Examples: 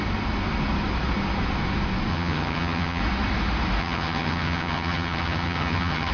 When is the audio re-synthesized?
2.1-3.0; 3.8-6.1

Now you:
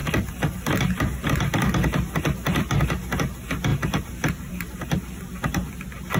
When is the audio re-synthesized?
0.0-0.8; 3.7-6.2